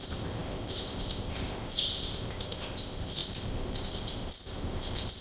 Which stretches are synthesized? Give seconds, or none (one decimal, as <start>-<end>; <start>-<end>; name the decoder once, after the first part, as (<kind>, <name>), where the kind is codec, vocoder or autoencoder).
0.0-5.2 (codec, ZipCodec)